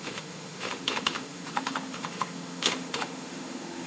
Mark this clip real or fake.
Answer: fake